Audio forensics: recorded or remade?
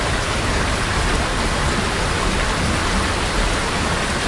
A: remade